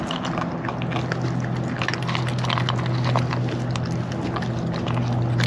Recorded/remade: recorded